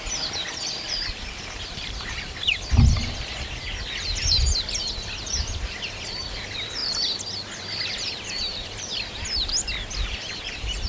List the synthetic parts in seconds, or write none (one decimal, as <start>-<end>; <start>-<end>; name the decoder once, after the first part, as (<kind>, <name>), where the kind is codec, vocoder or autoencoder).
0.0-10.9 (vocoder, BigVGAN v2)